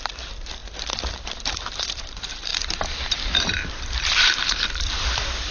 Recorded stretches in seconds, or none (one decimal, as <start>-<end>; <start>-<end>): none